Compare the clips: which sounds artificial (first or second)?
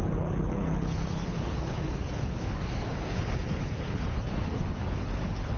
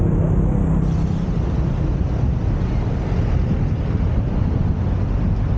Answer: first